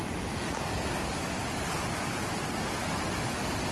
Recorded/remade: recorded